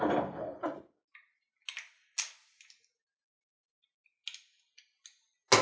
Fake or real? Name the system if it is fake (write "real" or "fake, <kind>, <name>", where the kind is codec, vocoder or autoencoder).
real